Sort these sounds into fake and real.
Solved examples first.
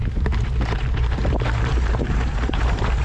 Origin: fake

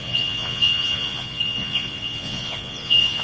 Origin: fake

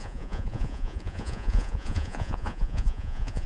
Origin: fake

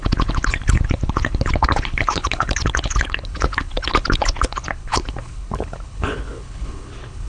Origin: fake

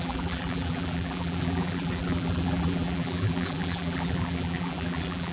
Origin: fake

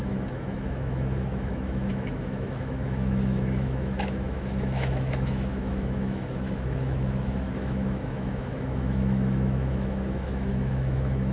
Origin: fake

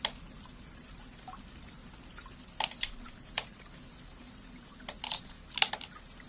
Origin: real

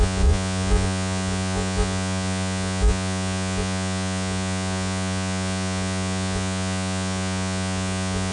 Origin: fake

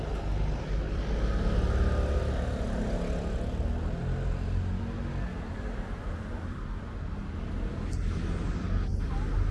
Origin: real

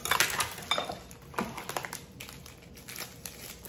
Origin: real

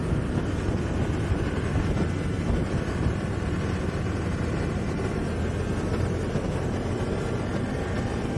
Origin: real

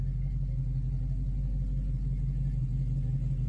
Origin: real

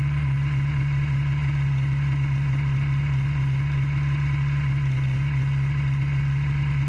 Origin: real